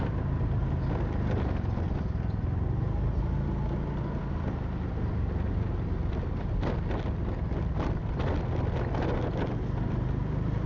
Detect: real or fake real